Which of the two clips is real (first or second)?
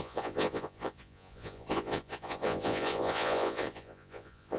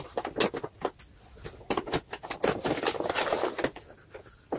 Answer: second